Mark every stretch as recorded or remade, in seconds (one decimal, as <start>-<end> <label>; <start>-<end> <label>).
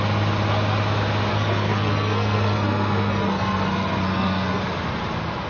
0.0-1.3 recorded; 1.3-4.6 remade; 4.6-5.5 recorded